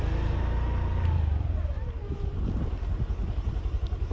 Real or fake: real